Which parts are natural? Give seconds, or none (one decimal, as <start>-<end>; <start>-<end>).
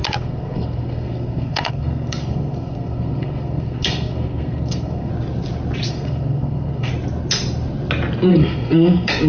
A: 5.1-5.9; 6.9-8.3